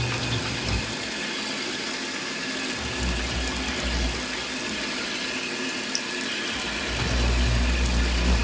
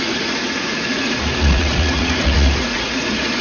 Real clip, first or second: first